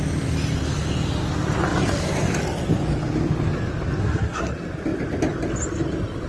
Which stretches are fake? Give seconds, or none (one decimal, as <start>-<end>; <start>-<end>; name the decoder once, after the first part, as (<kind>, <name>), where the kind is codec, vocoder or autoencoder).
4.0-4.5 (codec, SNAC)